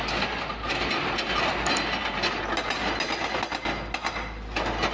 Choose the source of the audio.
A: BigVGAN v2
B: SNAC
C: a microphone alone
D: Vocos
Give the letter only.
C